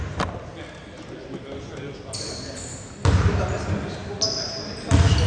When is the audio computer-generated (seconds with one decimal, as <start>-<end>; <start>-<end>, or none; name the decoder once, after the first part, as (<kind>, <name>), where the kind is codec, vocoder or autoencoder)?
none